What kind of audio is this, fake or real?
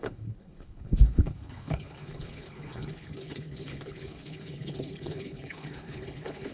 fake